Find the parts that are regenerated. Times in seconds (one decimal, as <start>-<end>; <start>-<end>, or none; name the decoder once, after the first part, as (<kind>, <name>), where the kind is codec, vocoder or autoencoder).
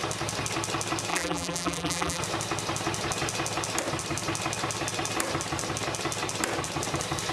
1.1-2.2 (vocoder, BigVGAN v2)